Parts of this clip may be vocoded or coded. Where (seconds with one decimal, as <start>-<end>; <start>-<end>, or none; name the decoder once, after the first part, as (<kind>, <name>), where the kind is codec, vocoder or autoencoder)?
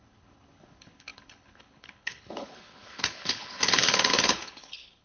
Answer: 0.0-5.0 (codec, HILCodec)